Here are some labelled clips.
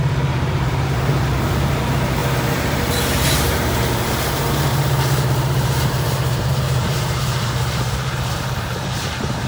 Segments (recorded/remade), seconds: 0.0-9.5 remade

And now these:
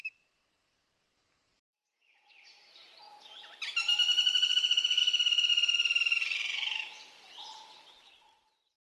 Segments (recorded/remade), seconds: 0.0-3.0 remade; 3.0-4.5 recorded; 4.5-5.0 remade; 5.0-5.5 recorded; 5.5-8.9 remade

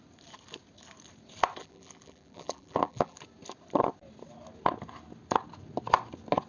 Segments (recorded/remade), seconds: 0.0-1.6 recorded; 1.6-3.2 remade; 3.2-6.5 recorded

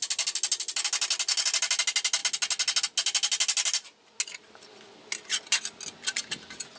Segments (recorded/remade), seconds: 0.0-6.8 recorded

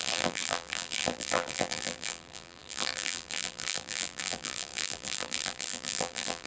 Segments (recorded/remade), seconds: 0.0-6.5 remade

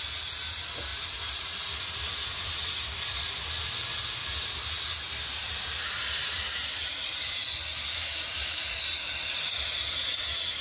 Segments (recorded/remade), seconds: 0.0-0.9 recorded; 0.9-2.9 remade; 2.9-4.2 recorded; 4.2-4.8 remade; 4.8-5.4 recorded; 5.4-10.2 remade; 10.2-10.6 recorded

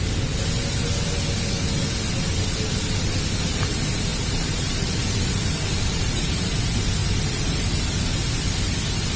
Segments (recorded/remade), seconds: 0.0-4.1 recorded; 4.1-6.5 remade; 6.5-7.0 recorded; 7.0-7.8 remade; 7.8-9.2 recorded